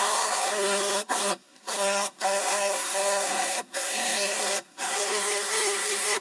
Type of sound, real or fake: fake